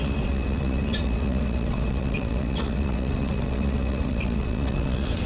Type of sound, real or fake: fake